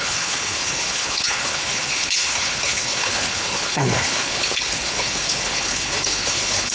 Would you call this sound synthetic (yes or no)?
yes